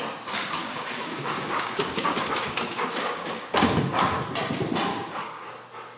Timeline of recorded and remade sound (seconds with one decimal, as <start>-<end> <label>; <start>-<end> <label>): 0.0-0.6 recorded; 0.6-4.2 remade; 4.2-4.9 recorded; 4.9-5.5 remade; 5.5-6.0 recorded